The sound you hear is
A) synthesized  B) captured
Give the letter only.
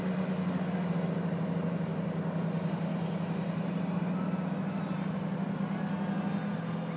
B